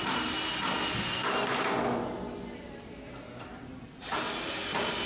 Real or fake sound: real